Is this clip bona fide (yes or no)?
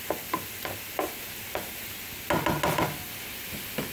yes